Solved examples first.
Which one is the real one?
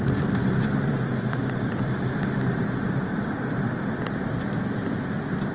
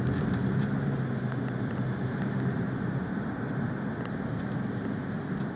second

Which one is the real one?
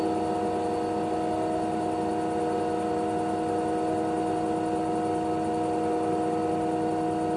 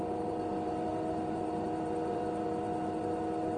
first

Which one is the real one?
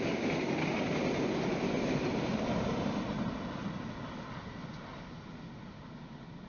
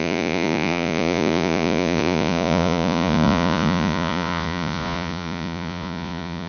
first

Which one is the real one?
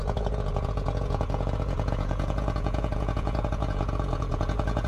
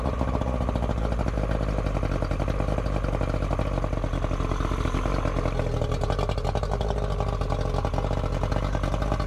second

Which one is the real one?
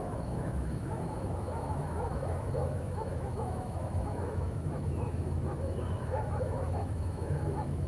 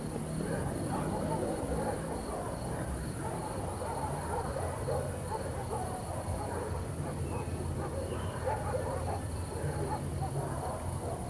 second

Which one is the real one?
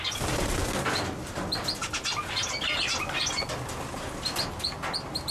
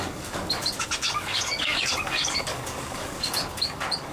first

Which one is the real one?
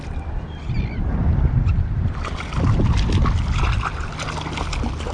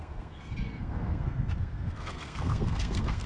first